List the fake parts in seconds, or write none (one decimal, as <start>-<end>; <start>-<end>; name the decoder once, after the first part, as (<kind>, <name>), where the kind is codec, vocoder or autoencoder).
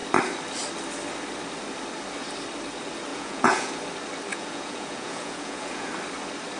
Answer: 3.1-3.7 (vocoder, Vocos); 4.3-5.9